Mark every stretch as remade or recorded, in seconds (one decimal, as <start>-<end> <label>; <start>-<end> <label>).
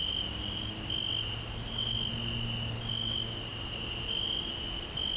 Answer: 0.0-5.2 recorded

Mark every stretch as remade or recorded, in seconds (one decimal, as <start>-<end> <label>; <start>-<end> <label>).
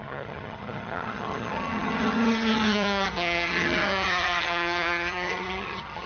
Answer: 0.0-6.1 remade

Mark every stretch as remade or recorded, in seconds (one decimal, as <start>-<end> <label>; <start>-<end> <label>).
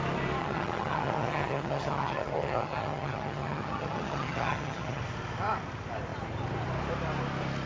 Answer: 0.0-0.4 recorded; 0.4-5.0 remade; 5.0-7.7 recorded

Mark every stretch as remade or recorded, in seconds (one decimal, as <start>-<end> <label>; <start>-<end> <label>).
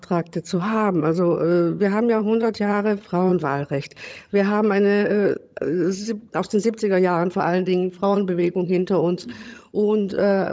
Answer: 0.0-10.5 remade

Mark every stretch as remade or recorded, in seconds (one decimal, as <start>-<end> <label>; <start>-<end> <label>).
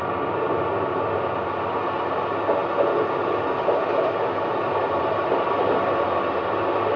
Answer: 0.0-7.0 recorded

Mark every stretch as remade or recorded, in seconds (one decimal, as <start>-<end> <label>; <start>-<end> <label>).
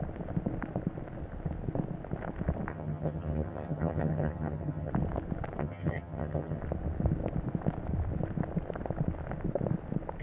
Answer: 0.0-2.7 recorded; 2.7-4.9 remade; 4.9-5.6 recorded; 5.6-6.6 remade; 6.6-10.2 recorded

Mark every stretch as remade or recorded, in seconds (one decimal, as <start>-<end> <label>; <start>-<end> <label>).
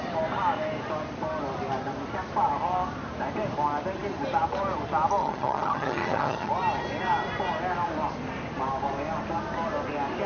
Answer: 0.0-5.2 recorded; 5.2-6.5 remade; 6.5-10.3 recorded